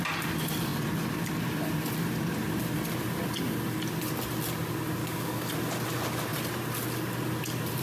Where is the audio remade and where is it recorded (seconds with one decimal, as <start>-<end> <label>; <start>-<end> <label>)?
0.0-5.0 recorded; 5.0-5.5 remade; 5.5-7.8 recorded